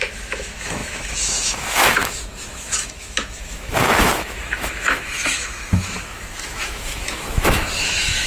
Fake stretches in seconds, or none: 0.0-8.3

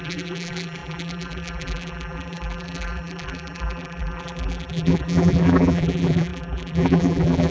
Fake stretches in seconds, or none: 0.0-7.5

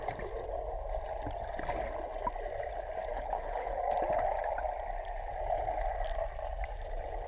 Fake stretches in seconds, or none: 3.1-3.8

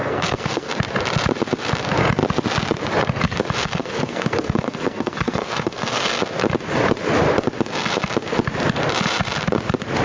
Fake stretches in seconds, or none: 0.0-0.7; 3.6-6.2

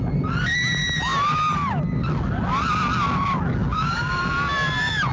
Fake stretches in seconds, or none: 3.6-4.2